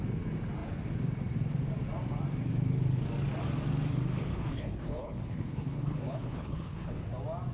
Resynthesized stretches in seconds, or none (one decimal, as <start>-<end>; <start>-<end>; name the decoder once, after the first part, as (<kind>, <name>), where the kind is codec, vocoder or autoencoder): 4.3-7.0 (codec, HILCodec)